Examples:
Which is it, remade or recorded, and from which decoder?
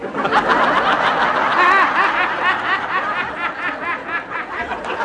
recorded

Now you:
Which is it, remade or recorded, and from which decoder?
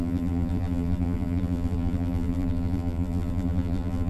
remade, vocoder, BigVGAN v2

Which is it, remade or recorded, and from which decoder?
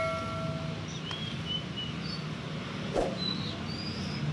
recorded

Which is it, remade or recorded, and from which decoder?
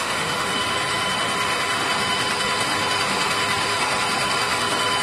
remade, autoencoder, DAC-VAE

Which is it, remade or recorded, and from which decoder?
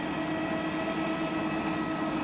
recorded